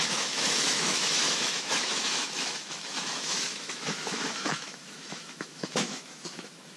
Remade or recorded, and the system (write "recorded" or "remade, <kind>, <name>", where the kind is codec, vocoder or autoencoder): remade, autoencoder, DAC-VAE